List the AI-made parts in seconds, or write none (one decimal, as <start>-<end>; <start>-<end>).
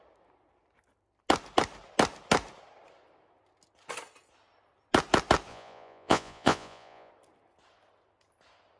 5.5-7.1